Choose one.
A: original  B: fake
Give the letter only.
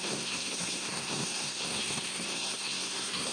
B